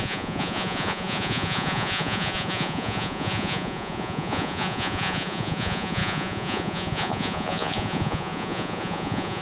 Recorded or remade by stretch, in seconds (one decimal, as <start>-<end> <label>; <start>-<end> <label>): 0.0-9.4 remade